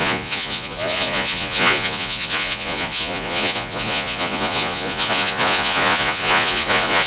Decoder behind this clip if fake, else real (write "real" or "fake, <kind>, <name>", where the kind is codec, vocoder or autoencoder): fake, vocoder, Vocos